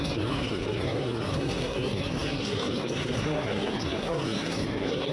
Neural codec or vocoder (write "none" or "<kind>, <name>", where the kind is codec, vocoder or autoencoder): codec, SNAC